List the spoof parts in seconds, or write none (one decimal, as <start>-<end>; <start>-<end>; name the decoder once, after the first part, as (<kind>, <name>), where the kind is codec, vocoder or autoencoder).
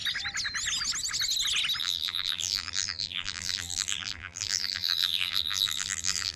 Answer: 1.8-6.4 (vocoder, BigVGAN v2)